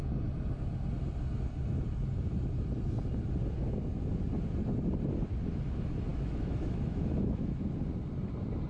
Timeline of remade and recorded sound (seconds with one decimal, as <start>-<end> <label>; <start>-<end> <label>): 0.0-6.1 recorded; 6.1-7.6 remade; 7.6-8.7 recorded